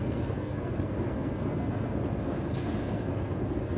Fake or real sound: fake